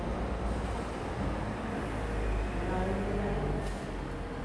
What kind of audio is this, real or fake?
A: real